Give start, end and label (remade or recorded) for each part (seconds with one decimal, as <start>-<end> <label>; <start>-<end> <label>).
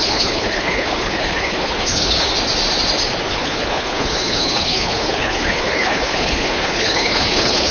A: 0.0-2.3 remade; 2.3-3.3 recorded; 3.3-7.7 remade